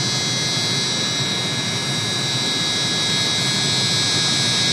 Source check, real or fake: real